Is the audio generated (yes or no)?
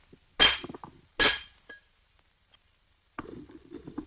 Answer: no